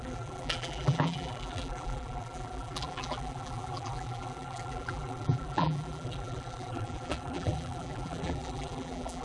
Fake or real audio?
fake